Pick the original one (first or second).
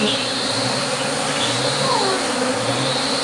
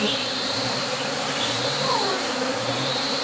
first